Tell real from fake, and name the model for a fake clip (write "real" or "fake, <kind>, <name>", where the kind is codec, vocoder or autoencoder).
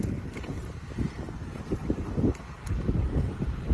fake, vocoder, BigVGAN v2